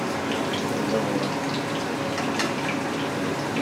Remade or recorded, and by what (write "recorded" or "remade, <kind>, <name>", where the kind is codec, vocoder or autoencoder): recorded